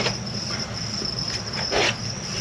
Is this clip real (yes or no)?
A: no